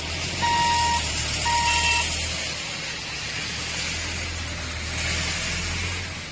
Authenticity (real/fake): real